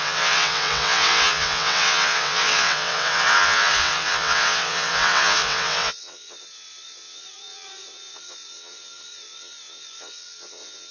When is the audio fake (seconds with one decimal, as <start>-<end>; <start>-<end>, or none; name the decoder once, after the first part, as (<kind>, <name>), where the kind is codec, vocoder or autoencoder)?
0.0-10.9 (vocoder, WaveNeXt)